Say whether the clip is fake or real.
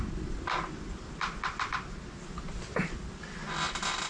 real